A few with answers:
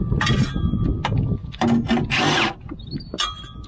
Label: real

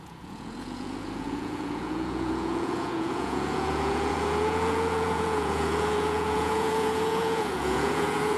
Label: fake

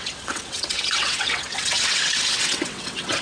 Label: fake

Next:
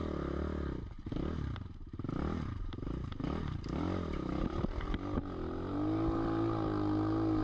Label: real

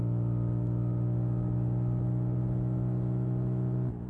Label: real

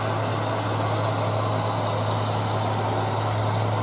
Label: real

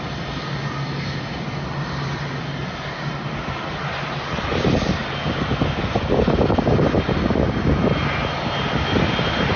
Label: real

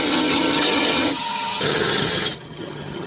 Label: fake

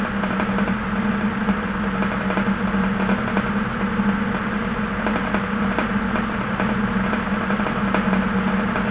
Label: real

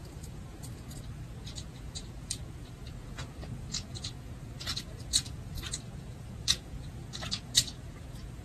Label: fake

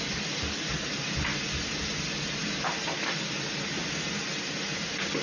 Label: real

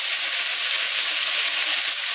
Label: real